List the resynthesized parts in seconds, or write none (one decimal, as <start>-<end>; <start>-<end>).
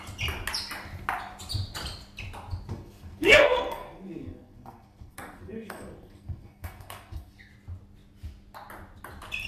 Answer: 2.7-7.5